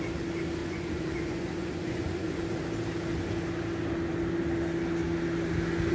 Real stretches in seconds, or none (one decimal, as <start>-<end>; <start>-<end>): 0.0-0.6; 2.4-5.9